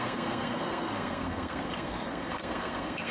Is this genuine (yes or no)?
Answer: no